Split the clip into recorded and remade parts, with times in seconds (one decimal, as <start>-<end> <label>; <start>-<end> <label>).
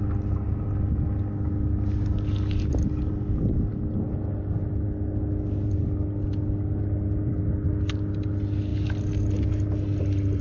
0.0-10.4 recorded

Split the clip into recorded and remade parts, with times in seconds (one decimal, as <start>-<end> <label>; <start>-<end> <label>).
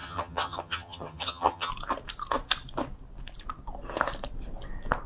0.0-1.7 remade; 1.7-5.1 recorded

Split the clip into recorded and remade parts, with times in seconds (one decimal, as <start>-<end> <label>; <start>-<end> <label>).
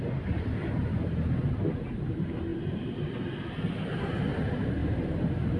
0.0-2.5 recorded; 2.5-3.1 remade; 3.1-4.8 recorded; 4.8-5.6 remade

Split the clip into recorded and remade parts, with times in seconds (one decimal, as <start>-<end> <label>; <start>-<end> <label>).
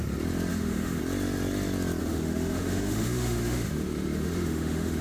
0.0-0.5 recorded; 0.5-1.0 remade; 1.0-2.0 recorded; 2.0-5.0 remade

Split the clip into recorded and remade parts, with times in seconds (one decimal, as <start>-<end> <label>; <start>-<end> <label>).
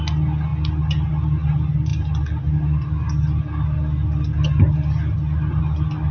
0.0-6.1 recorded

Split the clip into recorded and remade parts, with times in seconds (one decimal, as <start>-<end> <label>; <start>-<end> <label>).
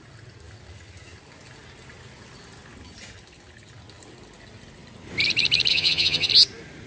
0.0-5.7 recorded; 5.7-6.3 remade; 6.3-6.9 recorded